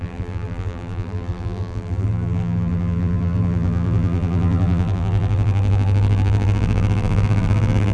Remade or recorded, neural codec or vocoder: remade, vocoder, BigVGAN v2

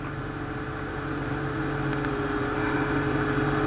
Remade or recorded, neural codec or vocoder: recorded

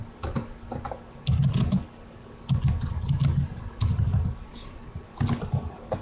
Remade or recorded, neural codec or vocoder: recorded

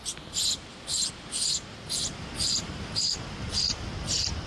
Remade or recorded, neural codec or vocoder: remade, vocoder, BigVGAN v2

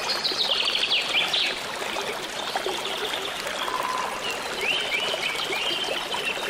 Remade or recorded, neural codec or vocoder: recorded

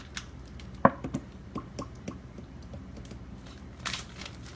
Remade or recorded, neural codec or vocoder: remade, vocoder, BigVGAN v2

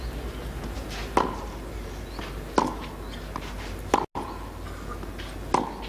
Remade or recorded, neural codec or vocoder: recorded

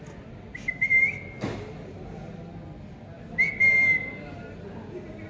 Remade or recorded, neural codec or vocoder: recorded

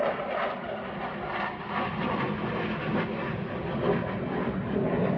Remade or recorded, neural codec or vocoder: recorded